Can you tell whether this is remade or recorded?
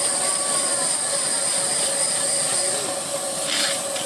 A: recorded